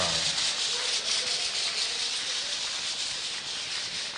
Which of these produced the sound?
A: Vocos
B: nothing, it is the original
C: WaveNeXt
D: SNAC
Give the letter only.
B